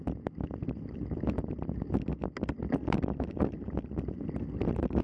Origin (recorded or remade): recorded